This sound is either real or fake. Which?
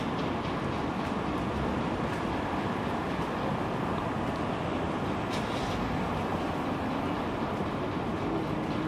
real